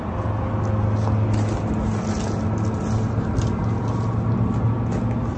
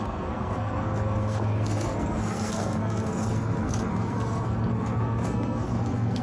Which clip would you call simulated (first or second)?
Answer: second